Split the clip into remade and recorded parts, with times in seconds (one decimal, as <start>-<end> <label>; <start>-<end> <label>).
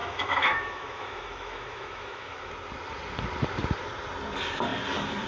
0.0-2.5 remade; 2.5-5.3 recorded